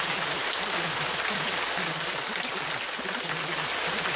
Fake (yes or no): no